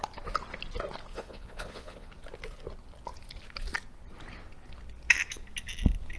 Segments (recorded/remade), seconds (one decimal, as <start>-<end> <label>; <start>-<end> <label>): 0.0-1.1 recorded; 1.1-2.1 remade; 2.1-6.2 recorded